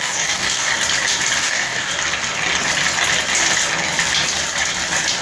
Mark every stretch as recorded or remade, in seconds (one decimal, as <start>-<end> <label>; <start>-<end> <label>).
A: 0.0-0.7 remade; 0.7-1.4 recorded; 1.4-1.9 remade; 1.9-5.2 recorded